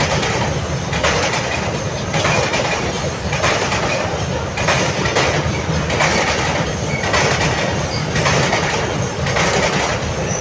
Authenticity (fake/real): real